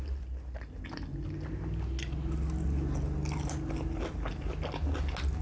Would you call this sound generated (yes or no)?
no